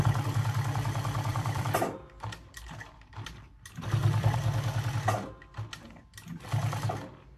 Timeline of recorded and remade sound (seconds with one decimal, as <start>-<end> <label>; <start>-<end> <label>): 0.0-1.3 recorded; 1.3-3.6 remade; 3.6-4.0 recorded; 4.0-4.9 remade; 4.9-7.4 recorded